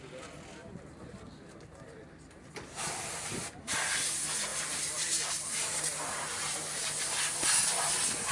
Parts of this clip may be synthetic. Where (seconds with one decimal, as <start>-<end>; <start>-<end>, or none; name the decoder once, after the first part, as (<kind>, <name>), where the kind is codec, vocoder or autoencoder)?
0.6-3.4 (vocoder, BigVGAN v2); 4.5-6.6